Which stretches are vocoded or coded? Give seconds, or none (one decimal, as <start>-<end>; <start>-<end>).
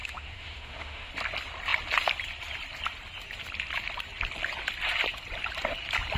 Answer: 0.0-1.1